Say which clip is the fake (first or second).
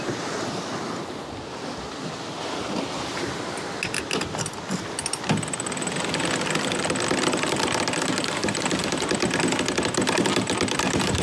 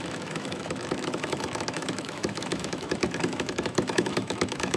second